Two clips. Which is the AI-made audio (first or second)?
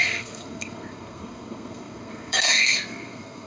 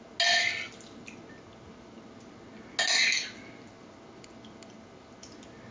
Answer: first